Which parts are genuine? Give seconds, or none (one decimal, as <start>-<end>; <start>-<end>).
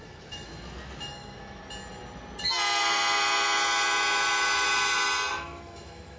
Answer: 0.5-1.0; 1.6-5.3